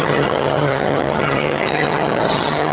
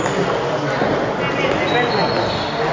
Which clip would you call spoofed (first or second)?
first